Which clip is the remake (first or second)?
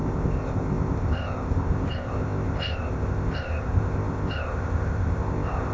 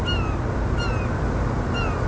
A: first